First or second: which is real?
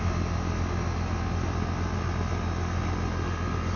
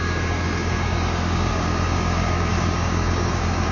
first